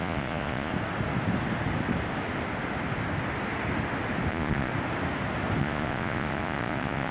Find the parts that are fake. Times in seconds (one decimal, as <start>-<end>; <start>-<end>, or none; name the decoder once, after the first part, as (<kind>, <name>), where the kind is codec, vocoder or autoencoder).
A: 0.0-0.7 (vocoder, Vocos); 4.3-4.7; 5.6-7.1